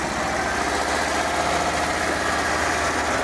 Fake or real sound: real